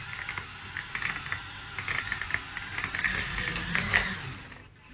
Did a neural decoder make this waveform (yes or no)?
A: no